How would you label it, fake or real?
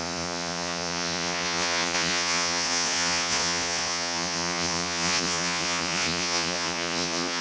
fake